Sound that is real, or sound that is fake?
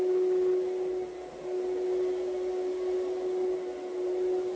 real